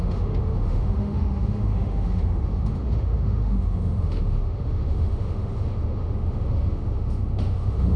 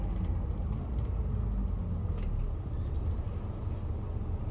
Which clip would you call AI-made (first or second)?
first